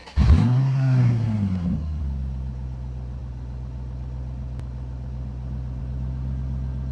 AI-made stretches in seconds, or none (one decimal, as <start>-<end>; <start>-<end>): 0.0-2.0